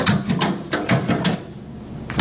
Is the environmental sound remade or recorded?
recorded